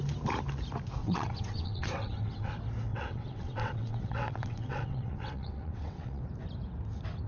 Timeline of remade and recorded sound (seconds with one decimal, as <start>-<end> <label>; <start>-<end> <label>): 0.0-1.0 recorded; 1.0-2.5 remade; 2.5-2.9 recorded; 2.9-6.2 remade; 6.2-7.3 recorded

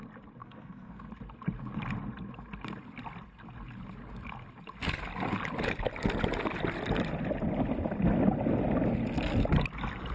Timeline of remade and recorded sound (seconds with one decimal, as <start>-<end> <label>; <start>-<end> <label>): 0.0-0.4 recorded; 0.4-1.1 remade; 1.1-10.1 recorded

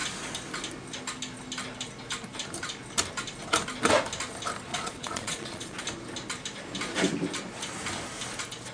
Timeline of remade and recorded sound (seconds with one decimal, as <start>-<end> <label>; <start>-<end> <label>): 0.0-4.7 recorded; 4.7-5.8 remade; 5.8-8.7 recorded

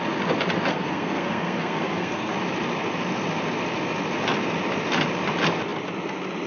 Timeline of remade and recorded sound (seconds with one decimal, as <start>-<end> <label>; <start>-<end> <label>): 0.0-0.7 recorded; 0.7-2.3 remade; 2.3-6.5 recorded

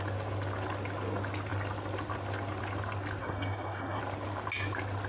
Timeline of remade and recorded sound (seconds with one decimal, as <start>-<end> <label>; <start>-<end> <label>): 0.0-3.2 recorded; 3.2-4.0 remade; 4.0-5.1 recorded